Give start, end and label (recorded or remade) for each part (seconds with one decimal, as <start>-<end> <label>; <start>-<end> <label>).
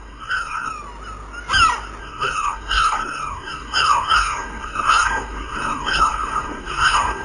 0.0-0.7 remade; 0.7-2.0 recorded; 2.0-7.2 remade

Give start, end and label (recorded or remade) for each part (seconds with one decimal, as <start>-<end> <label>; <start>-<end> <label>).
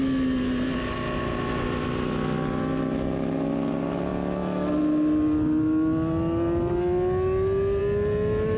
0.0-8.6 recorded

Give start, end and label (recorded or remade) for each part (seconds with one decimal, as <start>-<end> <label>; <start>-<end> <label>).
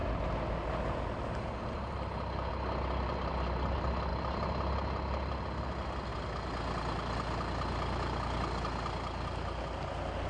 0.0-10.3 recorded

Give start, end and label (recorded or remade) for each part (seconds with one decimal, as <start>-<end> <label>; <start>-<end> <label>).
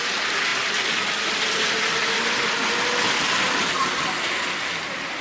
0.0-5.2 recorded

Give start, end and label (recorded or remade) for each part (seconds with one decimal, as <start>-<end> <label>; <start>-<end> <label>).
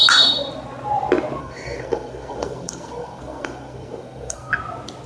0.0-1.4 recorded; 1.4-4.5 remade; 4.5-5.1 recorded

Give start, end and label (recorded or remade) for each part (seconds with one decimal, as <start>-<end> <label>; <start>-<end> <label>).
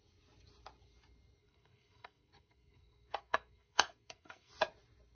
0.0-1.4 recorded; 1.4-4.5 remade; 4.5-5.1 recorded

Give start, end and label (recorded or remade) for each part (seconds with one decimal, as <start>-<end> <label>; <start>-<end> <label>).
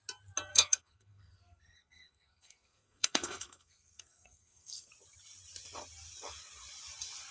0.0-0.5 recorded; 0.5-4.9 remade; 4.9-7.3 recorded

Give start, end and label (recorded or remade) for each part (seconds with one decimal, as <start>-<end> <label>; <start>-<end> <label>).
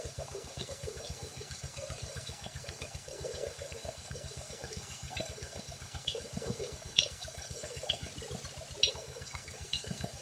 0.0-8.1 remade; 8.1-8.9 recorded; 8.9-10.2 remade